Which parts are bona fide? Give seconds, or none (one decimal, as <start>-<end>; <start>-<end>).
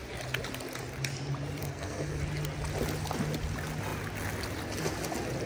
0.0-1.6; 2.2-5.5